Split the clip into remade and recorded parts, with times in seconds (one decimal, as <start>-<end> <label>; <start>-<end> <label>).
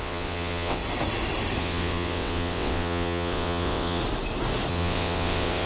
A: 0.0-0.8 remade; 0.8-1.6 recorded; 1.6-4.0 remade; 4.0-4.7 recorded; 4.7-5.7 remade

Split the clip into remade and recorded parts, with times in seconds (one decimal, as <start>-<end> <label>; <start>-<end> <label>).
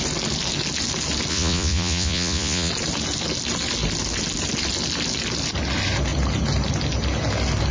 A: 0.0-1.3 recorded; 1.3-2.7 remade; 2.7-7.7 recorded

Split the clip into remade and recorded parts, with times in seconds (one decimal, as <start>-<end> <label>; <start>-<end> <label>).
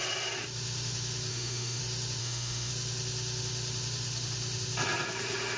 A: 0.0-1.3 recorded; 1.3-1.8 remade; 1.8-2.2 recorded; 2.2-2.7 remade; 2.7-5.6 recorded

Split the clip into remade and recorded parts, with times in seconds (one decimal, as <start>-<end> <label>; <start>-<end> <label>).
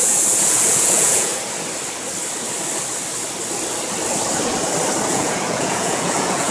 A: 0.0-1.3 remade; 1.3-5.1 recorded; 5.1-6.5 remade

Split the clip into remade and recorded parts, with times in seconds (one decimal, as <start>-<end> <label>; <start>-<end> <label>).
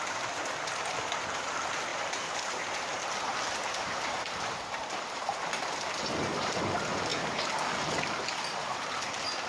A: 0.0-1.9 recorded; 1.9-6.6 remade; 6.6-9.5 recorded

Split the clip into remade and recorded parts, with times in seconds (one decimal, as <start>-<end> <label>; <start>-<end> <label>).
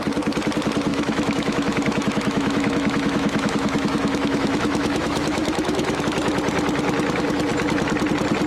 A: 0.0-0.9 recorded; 0.9-6.0 remade; 6.0-8.5 recorded